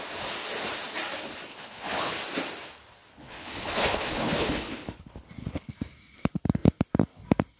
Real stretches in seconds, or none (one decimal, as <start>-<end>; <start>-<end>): 0.0-1.5; 2.1-3.1; 5.7-7.6